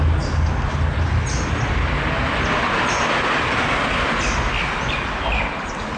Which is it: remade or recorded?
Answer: recorded